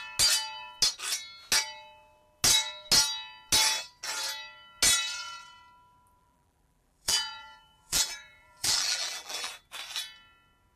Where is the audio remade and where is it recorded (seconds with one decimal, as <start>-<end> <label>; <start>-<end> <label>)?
0.0-6.2 recorded; 6.2-9.5 remade; 9.5-10.8 recorded

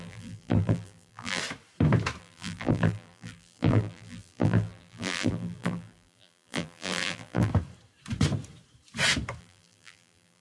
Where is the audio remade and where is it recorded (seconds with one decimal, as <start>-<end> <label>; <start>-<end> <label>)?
0.0-1.4 remade; 1.4-2.2 recorded; 2.2-7.5 remade; 7.5-9.4 recorded; 9.4-10.4 remade